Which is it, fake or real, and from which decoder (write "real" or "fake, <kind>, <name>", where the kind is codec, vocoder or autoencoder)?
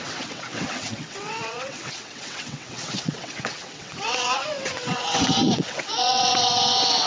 fake, vocoder, WaveNeXt